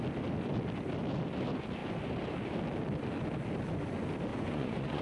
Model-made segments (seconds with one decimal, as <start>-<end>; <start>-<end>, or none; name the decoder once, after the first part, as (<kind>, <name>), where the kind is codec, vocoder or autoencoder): 4.3-5.0 (vocoder, Vocos)